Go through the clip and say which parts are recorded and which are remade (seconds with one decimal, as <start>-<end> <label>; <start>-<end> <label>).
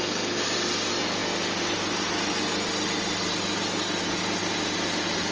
0.0-5.3 recorded